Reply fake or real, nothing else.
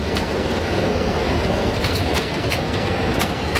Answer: fake